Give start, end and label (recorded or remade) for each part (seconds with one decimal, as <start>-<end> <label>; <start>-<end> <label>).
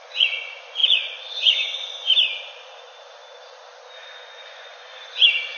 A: 0.0-2.1 remade; 2.1-4.2 recorded; 4.2-5.6 remade